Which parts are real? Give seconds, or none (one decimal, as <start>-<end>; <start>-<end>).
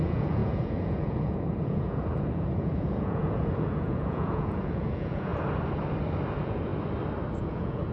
5.3-6.3; 6.7-7.4